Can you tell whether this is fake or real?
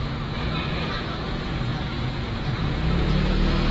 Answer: fake